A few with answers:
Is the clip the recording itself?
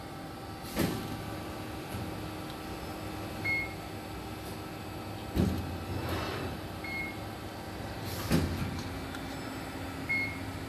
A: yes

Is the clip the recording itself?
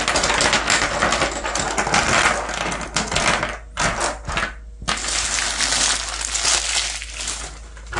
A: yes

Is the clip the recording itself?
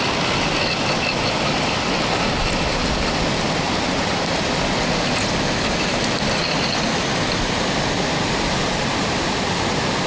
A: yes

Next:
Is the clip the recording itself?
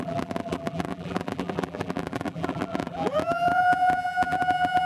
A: no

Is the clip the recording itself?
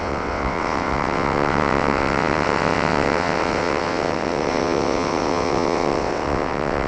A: no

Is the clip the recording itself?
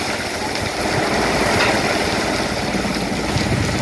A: yes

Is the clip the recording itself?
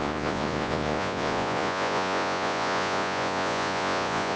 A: no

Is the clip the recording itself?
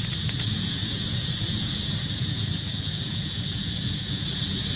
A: no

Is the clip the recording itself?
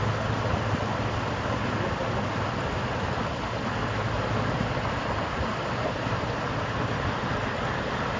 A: yes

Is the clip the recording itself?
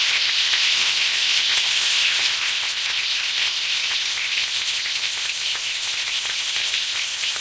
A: no